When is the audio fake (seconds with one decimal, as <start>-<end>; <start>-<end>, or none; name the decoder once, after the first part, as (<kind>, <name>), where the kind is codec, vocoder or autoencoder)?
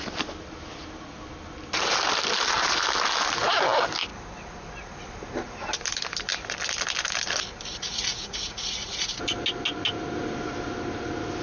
7.7-9.2 (vocoder, Vocos)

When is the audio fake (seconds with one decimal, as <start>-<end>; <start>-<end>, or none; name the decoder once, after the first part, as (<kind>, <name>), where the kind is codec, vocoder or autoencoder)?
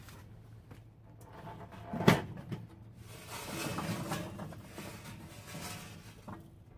none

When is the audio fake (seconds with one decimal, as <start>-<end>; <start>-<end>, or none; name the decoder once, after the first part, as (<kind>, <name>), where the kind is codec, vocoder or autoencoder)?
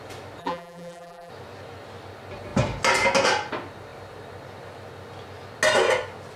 0.4-1.3 (vocoder, BigVGAN v2)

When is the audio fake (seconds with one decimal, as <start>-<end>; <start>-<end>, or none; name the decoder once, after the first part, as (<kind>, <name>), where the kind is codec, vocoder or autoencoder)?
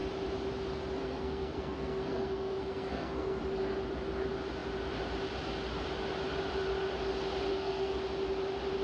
1.0-3.4 (codec, SNAC); 7.5-8.0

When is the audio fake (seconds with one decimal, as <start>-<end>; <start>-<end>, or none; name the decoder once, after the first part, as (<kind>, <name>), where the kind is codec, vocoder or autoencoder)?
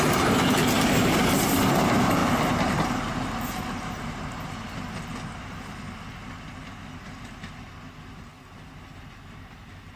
none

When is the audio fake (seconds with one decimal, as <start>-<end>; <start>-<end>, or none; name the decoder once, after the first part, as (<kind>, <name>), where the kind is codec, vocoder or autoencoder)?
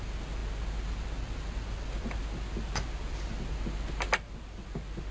none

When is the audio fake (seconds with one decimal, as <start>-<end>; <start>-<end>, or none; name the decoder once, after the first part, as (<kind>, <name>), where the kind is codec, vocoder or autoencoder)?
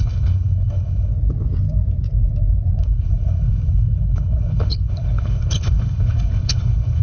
0.0-1.1 (codec, HILCodec); 2.8-7.0